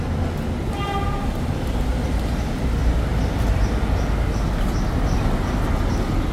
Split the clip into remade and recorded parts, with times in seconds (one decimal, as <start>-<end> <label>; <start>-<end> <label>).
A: 0.0-6.3 recorded